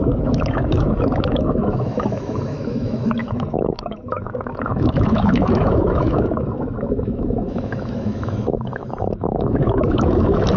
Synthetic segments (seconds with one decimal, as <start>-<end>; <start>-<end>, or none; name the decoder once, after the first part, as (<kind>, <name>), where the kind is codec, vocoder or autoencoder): 0.0-10.6 (autoencoder, DAC-VAE)